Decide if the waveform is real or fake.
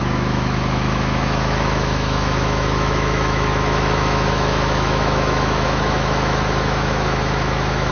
fake